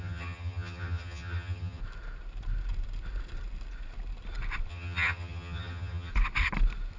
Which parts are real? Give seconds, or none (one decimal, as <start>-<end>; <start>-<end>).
1.8-4.7; 6.1-7.0